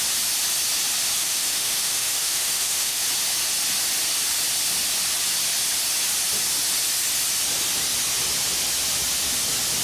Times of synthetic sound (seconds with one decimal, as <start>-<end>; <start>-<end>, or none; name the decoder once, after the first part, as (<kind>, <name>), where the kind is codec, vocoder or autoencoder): 1.2-3.0 (autoencoder, DAC-VAE)